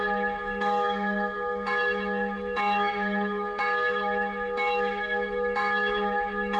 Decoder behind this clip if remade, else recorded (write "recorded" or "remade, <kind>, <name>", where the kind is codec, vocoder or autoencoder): remade, autoencoder, DAC-VAE